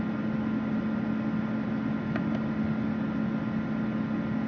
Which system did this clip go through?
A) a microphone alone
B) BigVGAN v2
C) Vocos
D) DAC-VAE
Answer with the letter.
A